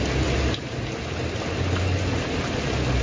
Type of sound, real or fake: real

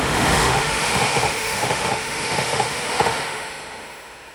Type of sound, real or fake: fake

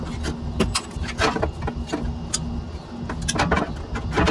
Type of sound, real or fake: real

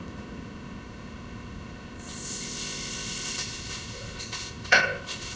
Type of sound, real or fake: fake